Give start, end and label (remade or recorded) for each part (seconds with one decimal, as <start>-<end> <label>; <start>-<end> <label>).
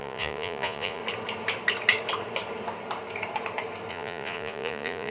0.0-1.0 remade; 1.0-3.9 recorded; 3.9-5.1 remade